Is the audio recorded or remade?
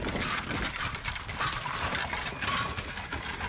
recorded